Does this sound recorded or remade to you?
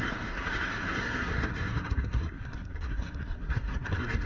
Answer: remade